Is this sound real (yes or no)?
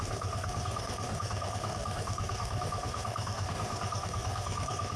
no